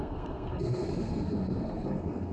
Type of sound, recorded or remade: remade